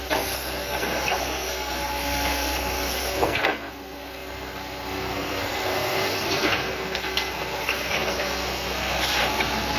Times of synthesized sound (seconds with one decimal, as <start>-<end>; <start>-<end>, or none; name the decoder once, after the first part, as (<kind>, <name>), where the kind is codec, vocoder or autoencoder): 0.0-9.8 (codec, SNAC)